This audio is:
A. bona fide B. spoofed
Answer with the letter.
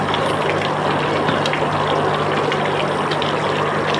A